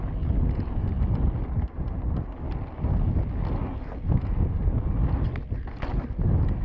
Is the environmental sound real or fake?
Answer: real